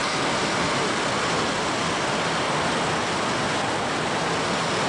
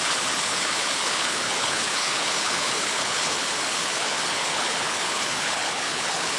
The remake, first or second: second